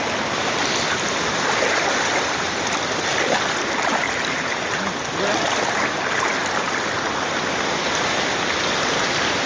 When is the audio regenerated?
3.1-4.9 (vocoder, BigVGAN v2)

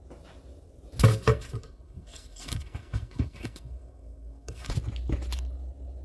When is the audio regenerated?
1.1-4.7 (codec, SNAC)